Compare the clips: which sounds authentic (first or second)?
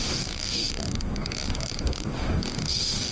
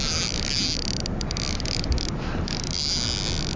second